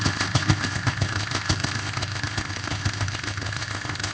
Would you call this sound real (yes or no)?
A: no